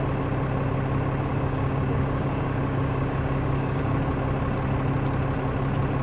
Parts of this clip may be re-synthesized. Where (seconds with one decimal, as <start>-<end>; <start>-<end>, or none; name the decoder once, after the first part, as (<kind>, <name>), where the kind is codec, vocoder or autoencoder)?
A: 1.3-4.0 (codec, DAC)